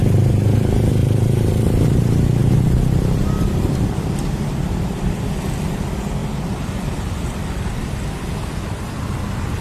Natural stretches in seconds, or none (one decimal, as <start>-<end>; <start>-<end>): 0.0-1.0; 2.0-2.4; 5.7-6.2; 9.1-9.6